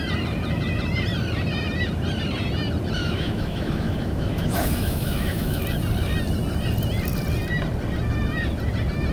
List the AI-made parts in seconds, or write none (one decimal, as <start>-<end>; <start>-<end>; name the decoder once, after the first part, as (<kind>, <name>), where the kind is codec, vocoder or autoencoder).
3.0-5.6 (autoencoder, DAC-VAE)